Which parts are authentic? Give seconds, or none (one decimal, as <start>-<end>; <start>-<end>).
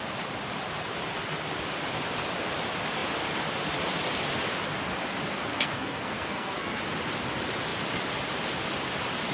0.0-5.5; 6.8-9.3